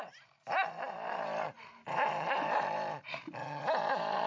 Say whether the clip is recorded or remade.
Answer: remade